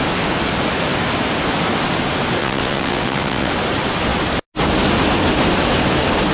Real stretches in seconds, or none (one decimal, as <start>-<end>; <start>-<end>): 0.0-2.4; 3.5-6.3

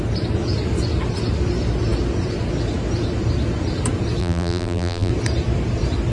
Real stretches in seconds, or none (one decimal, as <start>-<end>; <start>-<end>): 0.0-4.2; 5.1-6.1

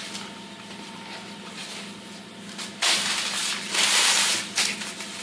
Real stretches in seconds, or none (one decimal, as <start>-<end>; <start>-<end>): 1.6-3.9; 4.3-4.8

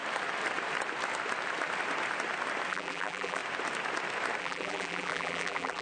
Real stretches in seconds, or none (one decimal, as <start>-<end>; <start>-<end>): 0.0-2.7; 3.4-4.4

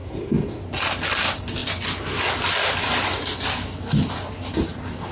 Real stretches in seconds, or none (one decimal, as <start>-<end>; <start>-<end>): 0.6-5.1

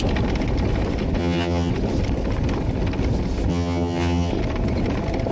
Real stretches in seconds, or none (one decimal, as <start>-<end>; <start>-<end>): 0.0-1.2; 1.7-3.5; 4.3-5.3

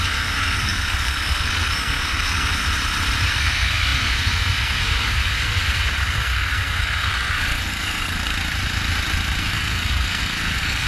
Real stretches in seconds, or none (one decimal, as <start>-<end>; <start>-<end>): 2.6-3.3; 8.3-9.4

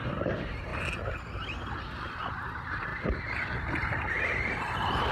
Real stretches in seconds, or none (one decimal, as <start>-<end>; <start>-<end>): 0.7-2.3; 2.9-4.1